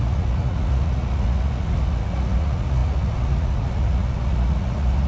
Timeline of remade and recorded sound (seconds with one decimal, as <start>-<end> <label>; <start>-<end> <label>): 0.0-5.1 remade